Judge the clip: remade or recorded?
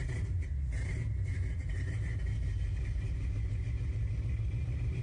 remade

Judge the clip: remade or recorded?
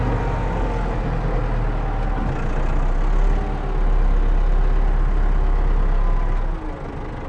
recorded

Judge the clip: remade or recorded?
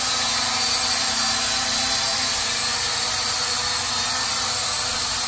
recorded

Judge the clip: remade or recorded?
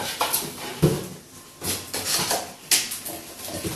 recorded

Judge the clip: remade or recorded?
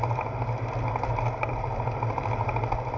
recorded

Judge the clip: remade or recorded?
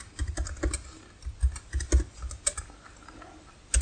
recorded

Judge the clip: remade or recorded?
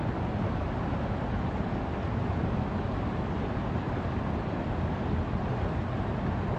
recorded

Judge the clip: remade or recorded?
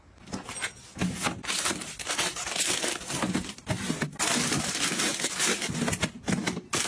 recorded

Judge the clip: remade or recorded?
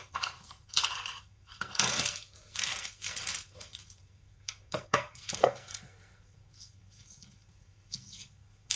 remade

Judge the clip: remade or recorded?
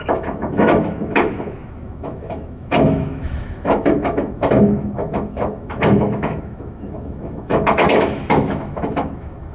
remade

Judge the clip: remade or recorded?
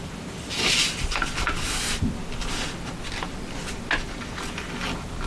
recorded